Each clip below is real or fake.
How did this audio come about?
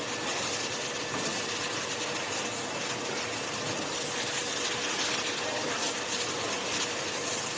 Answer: real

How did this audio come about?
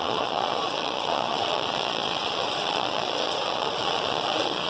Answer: fake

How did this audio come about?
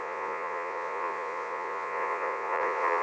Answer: fake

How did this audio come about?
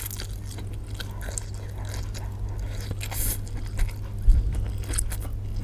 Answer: real